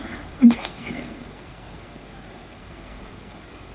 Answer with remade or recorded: remade